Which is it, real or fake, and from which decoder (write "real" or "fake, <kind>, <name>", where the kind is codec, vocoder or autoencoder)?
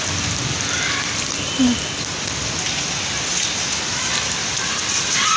real